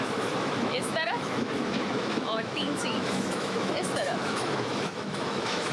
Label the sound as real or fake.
fake